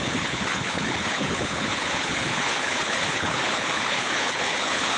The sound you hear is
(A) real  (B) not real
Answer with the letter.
B